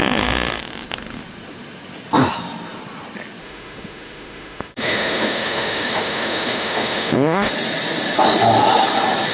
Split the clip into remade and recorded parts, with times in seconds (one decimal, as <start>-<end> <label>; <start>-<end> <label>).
0.0-0.6 remade; 0.6-3.4 recorded; 3.4-7.5 remade; 7.5-9.3 recorded